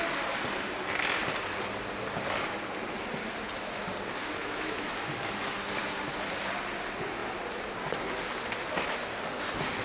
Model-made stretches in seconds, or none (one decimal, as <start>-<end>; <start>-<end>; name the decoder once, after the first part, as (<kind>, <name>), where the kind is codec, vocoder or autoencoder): 4.2-4.9 (autoencoder, DAC-VAE)